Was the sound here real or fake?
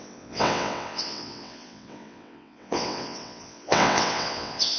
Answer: fake